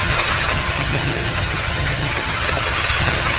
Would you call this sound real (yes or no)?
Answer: no